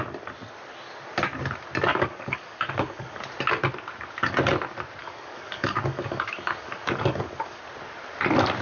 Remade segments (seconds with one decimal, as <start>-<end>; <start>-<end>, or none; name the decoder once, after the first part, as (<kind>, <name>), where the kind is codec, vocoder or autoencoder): 1.9-3.3 (codec, DAC); 5.0-7.6